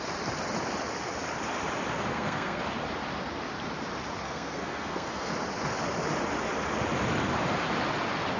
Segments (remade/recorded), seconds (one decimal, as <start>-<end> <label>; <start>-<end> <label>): 0.0-2.1 recorded; 2.1-2.6 remade; 2.6-4.2 recorded; 4.2-5.3 remade; 5.3-8.4 recorded